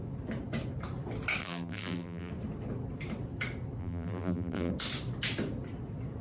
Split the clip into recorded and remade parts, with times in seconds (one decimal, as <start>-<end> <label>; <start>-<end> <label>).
0.0-1.4 recorded; 1.4-2.3 remade; 2.3-3.8 recorded; 3.8-4.7 remade; 4.7-6.2 recorded